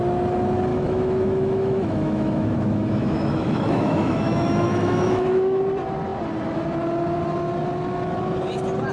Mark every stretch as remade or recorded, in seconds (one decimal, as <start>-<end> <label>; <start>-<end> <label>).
0.0-0.7 recorded; 0.7-5.6 remade; 5.6-8.9 recorded